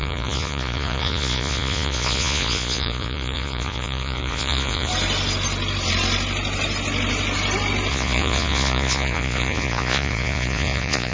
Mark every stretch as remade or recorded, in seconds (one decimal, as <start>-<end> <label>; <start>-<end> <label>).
0.0-4.9 remade; 4.9-7.9 recorded; 7.9-11.1 remade